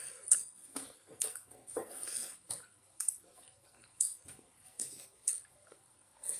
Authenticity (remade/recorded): remade